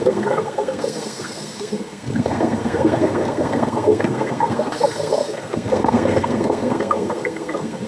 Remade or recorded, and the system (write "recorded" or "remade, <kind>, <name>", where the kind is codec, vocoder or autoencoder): remade, codec, SNAC